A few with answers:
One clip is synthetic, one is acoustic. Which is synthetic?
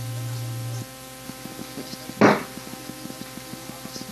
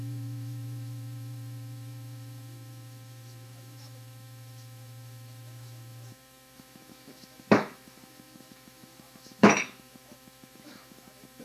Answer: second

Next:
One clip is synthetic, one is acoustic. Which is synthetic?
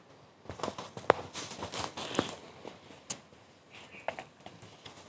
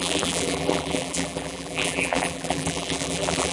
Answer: second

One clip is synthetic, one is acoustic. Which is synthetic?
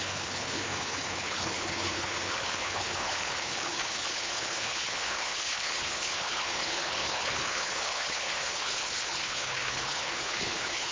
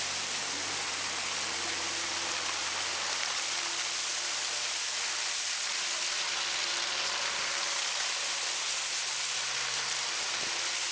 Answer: first